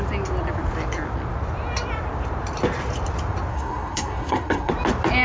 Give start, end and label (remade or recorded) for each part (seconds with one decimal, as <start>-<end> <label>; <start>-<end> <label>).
0.0-3.5 recorded; 3.5-4.7 remade; 4.7-5.2 recorded